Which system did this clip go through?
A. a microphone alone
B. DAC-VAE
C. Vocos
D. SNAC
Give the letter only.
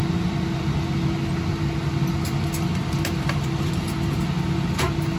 A